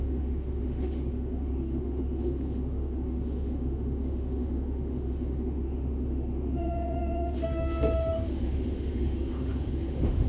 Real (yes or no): no